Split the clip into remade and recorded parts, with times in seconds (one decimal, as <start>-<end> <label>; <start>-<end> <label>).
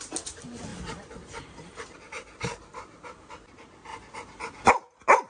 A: 0.0-0.7 recorded; 0.7-3.3 remade; 3.3-3.9 recorded; 3.9-4.7 remade; 4.7-5.3 recorded